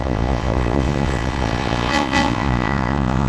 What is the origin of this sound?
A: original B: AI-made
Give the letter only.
B